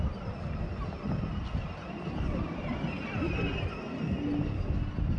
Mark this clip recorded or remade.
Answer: recorded